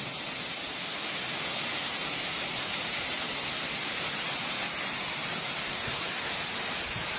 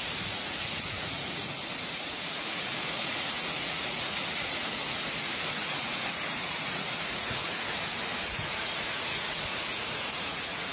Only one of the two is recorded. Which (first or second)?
first